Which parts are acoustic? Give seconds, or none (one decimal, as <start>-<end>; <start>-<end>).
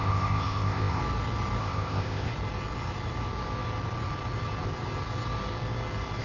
1.0-1.6; 2.3-6.2